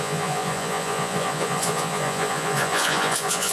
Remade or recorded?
remade